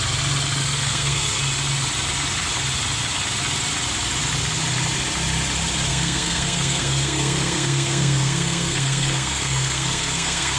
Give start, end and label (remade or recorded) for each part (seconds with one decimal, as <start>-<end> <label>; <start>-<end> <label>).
0.0-0.6 recorded; 0.6-1.4 remade; 1.4-5.9 recorded; 5.9-10.6 remade